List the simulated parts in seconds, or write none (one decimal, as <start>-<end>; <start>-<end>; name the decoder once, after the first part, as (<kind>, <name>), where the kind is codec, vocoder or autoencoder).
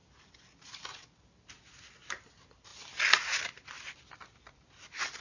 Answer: none